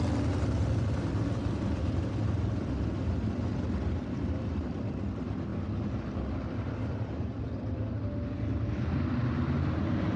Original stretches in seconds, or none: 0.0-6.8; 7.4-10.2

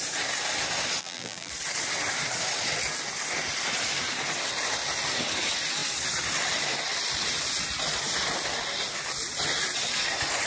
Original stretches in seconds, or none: 0.0-1.0; 1.5-10.5

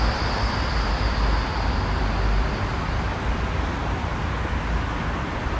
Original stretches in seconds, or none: 2.7-4.5

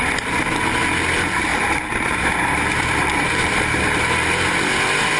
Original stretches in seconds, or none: 0.0-1.5; 4.6-5.2

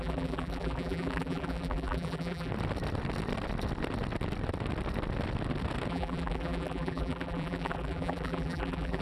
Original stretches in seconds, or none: 2.5-5.9

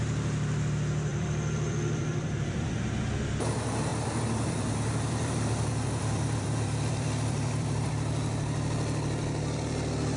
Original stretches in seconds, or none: 0.0-1.1; 3.0-3.9; 7.9-10.2